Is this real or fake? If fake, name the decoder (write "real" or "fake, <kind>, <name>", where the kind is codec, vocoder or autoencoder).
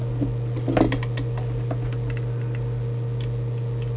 real